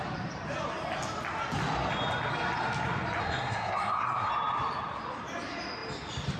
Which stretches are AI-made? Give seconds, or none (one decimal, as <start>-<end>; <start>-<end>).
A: 3.2-4.3